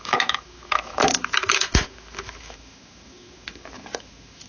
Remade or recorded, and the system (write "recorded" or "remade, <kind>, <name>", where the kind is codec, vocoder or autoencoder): remade, autoencoder, DAC-VAE